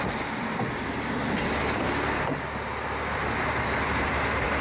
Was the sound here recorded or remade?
recorded